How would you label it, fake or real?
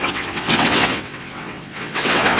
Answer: fake